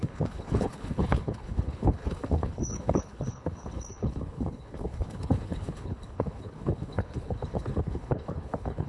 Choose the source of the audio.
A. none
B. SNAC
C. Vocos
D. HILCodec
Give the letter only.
D